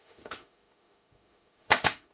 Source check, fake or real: fake